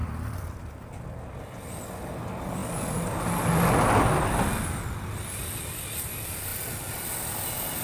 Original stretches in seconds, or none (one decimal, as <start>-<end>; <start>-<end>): 0.0-7.8